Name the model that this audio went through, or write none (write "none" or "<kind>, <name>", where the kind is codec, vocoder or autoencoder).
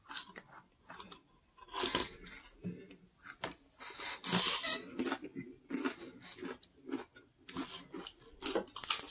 none